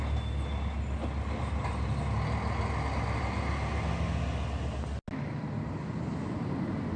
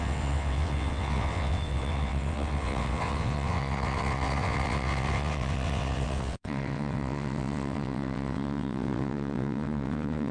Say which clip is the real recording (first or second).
first